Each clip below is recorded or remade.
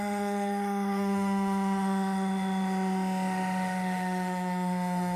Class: remade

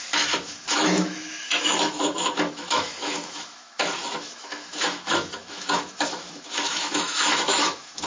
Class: remade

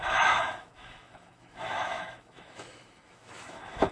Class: remade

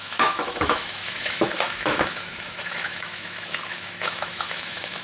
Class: remade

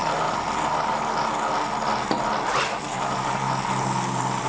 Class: recorded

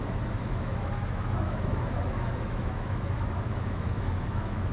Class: remade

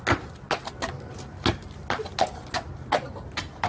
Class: recorded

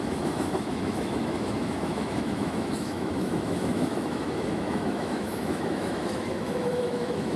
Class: remade